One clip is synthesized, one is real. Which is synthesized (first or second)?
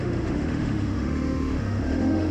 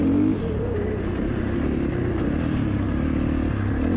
first